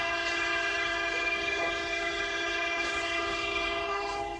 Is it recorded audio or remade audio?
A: remade